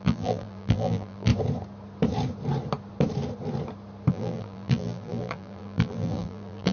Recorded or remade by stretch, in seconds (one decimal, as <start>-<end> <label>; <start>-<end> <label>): 0.0-1.3 remade; 1.3-4.1 recorded; 4.1-6.7 remade